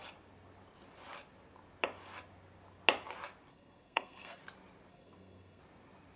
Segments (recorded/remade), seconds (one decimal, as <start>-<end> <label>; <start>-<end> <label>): 0.0-3.5 recorded; 3.5-4.4 remade; 4.4-4.9 recorded; 4.9-5.6 remade; 5.6-6.2 recorded